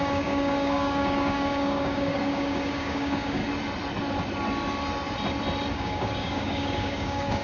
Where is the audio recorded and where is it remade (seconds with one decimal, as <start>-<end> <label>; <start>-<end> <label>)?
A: 0.0-3.4 remade; 3.4-5.7 recorded; 5.7-7.4 remade